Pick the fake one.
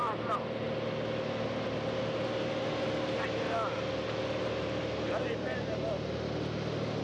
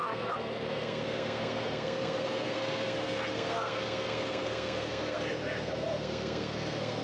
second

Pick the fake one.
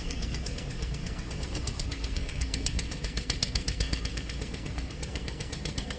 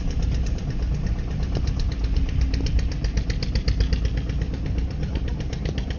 first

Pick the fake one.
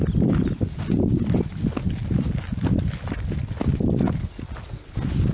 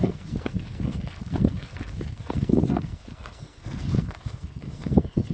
second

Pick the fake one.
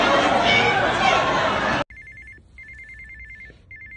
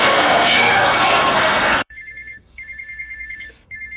second